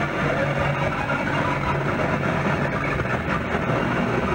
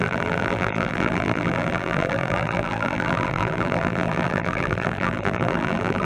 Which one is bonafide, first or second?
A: first